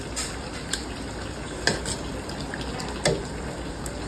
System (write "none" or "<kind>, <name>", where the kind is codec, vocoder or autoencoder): none